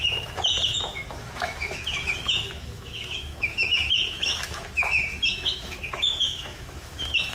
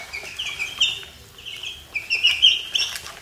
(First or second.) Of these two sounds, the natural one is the second